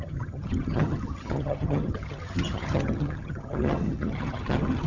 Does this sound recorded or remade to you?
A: remade